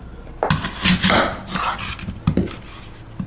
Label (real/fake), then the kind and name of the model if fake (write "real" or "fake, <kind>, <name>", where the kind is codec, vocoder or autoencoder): real